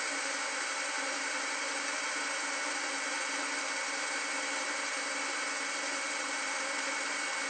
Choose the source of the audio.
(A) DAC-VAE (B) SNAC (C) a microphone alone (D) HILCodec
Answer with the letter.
C